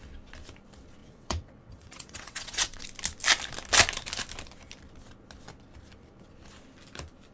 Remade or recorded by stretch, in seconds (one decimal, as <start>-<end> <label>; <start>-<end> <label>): 0.0-1.0 recorded; 1.0-2.8 remade; 2.8-7.3 recorded